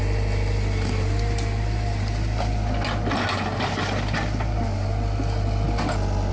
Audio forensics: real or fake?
real